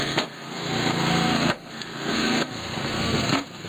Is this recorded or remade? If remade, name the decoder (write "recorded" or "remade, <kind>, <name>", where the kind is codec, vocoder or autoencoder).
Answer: remade, codec, SNAC